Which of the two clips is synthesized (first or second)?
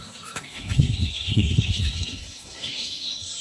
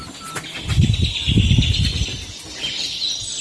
first